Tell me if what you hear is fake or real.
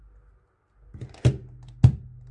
real